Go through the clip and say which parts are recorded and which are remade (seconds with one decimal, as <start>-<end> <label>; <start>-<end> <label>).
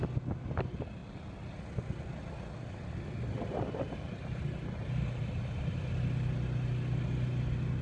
0.0-7.8 recorded